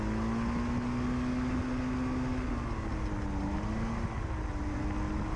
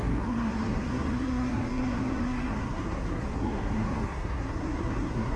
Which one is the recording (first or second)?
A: first